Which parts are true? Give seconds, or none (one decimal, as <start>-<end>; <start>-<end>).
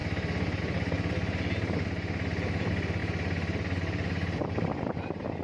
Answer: 0.0-5.4